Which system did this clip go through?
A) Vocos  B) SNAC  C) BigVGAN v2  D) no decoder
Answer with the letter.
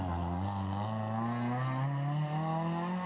D